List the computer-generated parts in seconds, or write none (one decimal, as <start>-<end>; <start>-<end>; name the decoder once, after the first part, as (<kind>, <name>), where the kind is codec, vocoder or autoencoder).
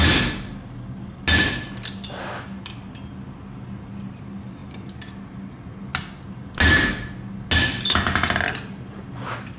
none